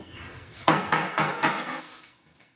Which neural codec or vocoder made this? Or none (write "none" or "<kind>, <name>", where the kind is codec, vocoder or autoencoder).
codec, SNAC